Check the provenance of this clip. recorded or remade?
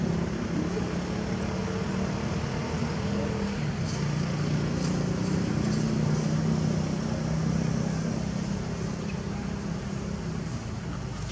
recorded